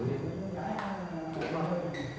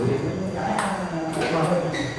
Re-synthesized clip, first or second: second